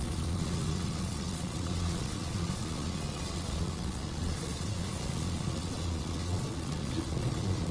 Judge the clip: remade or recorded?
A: remade